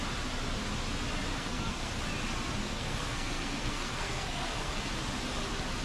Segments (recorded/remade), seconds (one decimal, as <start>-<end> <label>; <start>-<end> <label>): 0.0-1.3 recorded; 1.3-2.0 remade; 2.0-2.6 recorded; 2.6-4.9 remade; 4.9-5.8 recorded